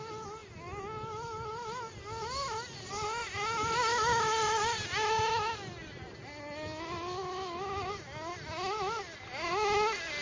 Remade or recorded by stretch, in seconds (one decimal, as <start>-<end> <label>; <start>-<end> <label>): 0.0-10.2 recorded